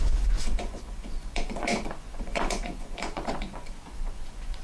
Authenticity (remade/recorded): remade